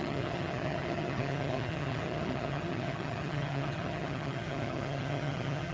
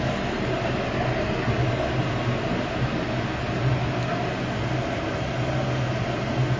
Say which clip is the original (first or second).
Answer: second